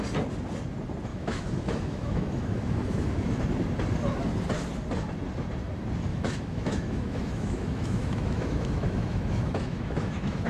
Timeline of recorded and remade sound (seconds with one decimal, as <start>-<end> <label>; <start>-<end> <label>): 0.0-1.1 recorded; 1.1-3.4 remade; 3.4-6.1 recorded; 6.1-10.5 remade